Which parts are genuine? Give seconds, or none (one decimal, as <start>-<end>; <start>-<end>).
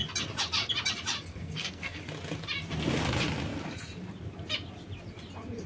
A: 0.0-1.3; 2.0-5.7